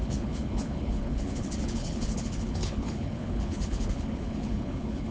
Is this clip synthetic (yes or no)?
yes